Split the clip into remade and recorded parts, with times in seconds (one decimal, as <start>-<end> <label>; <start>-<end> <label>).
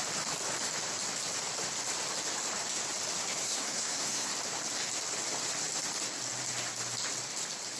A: 0.0-3.4 recorded; 3.4-4.3 remade; 4.3-7.8 recorded